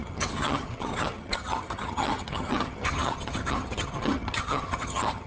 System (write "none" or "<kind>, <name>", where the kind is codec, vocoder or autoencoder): vocoder, HiFi-GAN